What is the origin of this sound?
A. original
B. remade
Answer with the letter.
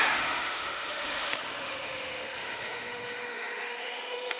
B